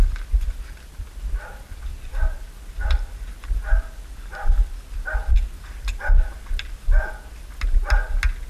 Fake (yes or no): no